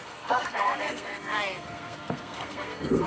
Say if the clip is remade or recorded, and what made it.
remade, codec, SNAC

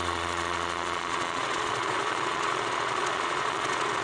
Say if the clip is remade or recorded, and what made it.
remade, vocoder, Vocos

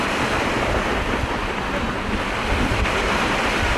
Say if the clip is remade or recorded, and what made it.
recorded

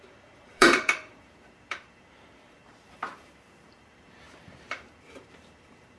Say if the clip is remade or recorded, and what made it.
remade, vocoder, BigVGAN v2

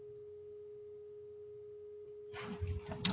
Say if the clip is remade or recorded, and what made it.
recorded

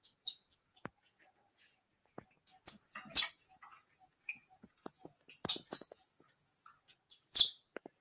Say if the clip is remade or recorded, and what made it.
remade, vocoder, Vocos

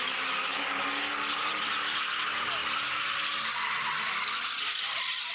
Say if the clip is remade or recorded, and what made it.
recorded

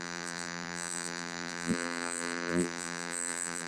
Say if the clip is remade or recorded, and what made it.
remade, vocoder, BigVGAN v2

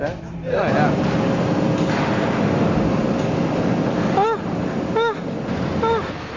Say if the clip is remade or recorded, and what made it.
recorded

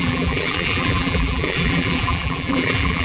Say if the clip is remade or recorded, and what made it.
remade, vocoder, BigVGAN v2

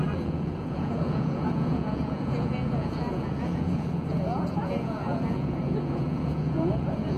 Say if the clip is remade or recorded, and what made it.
remade, vocoder, Vocos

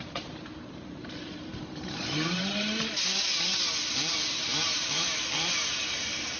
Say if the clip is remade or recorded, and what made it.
remade, vocoder, BigVGAN v2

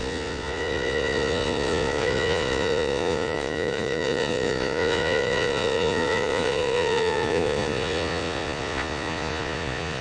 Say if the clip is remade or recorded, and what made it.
remade, vocoder, Vocos